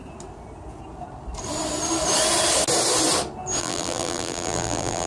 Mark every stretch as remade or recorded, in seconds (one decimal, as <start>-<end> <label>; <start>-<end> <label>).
0.0-3.6 recorded; 3.6-5.1 remade

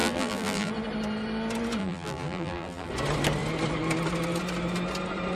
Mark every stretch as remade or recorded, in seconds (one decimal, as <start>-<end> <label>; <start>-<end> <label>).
0.0-0.7 remade; 0.7-1.8 recorded; 1.8-2.9 remade; 2.9-5.4 recorded

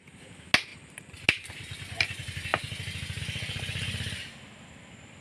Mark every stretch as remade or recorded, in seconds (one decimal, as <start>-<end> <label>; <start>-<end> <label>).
0.0-0.7 recorded; 0.7-1.2 remade; 1.2-5.2 recorded

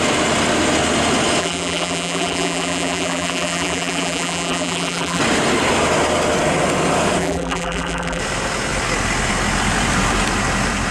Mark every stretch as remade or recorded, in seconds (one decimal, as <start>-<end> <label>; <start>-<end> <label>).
0.0-1.4 recorded; 1.4-5.2 remade; 5.2-7.2 recorded; 7.2-8.2 remade; 8.2-10.9 recorded

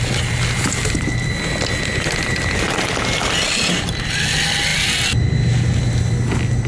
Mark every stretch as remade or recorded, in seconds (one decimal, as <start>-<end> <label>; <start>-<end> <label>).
0.0-6.7 recorded

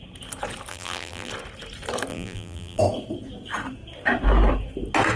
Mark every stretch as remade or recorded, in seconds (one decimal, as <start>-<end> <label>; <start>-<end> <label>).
0.0-0.7 recorded; 0.7-1.3 remade; 1.3-2.1 recorded; 2.1-2.8 remade; 2.8-5.2 recorded